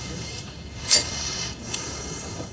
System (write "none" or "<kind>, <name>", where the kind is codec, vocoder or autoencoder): codec, DAC